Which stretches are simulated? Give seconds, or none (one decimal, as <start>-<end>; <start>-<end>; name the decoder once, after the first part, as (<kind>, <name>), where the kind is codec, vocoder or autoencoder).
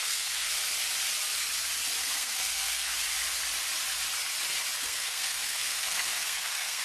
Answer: 0.0-0.6 (codec, SNAC); 2.0-2.9; 4.8-6.8